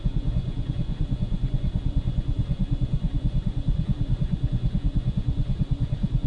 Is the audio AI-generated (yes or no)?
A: yes